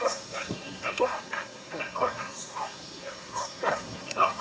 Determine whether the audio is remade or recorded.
remade